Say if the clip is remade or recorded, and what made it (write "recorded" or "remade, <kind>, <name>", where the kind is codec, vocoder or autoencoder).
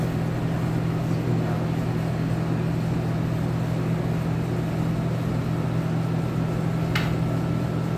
recorded